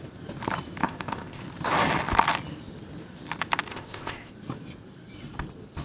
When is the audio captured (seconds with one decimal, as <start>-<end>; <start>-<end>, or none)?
0.0-0.8; 1.4-3.7; 4.3-5.8